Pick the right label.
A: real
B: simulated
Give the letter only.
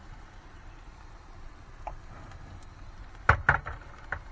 A